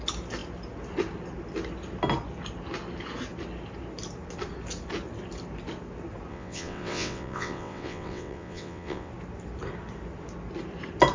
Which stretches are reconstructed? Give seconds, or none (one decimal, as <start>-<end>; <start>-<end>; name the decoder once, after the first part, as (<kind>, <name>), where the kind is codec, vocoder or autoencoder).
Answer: 6.3-9.1 (vocoder, WaveNeXt)